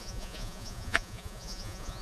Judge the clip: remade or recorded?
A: remade